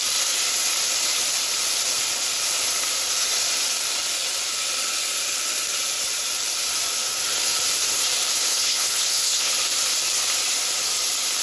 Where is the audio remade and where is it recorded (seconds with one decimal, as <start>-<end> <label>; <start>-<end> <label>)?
0.0-8.5 recorded; 8.5-9.5 remade; 9.5-11.4 recorded